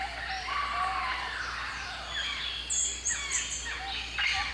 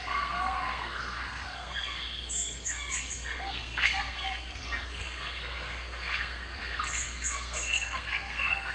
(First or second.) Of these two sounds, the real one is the first